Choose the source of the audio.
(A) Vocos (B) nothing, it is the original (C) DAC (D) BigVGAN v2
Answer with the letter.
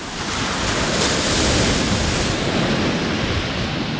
B